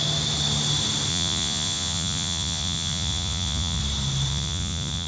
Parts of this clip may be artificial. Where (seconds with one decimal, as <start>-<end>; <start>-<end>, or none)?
1.1-3.8; 4.3-5.1